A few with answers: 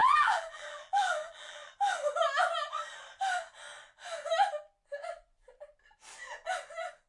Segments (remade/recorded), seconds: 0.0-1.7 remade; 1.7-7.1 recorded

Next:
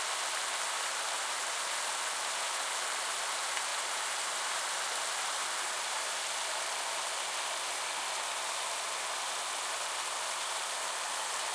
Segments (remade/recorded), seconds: 0.0-3.7 recorded; 3.7-5.4 remade; 5.4-11.5 recorded

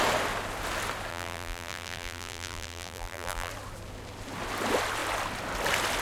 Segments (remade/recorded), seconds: 0.0-1.1 recorded; 1.1-3.5 remade; 3.5-6.0 recorded

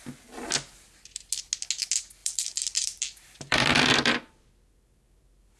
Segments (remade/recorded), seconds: 0.0-2.2 recorded; 2.2-4.5 remade; 4.5-5.6 recorded

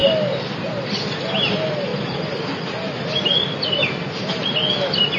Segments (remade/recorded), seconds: 0.0-5.2 recorded

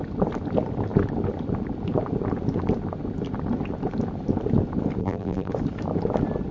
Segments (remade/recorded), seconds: 0.0-5.0 recorded; 5.0-5.5 remade; 5.5-6.5 recorded

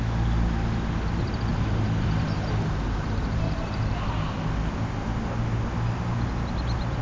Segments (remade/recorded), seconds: 0.0-1.5 recorded; 1.5-3.9 remade; 3.9-7.0 recorded